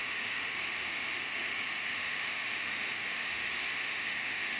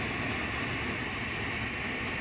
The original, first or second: second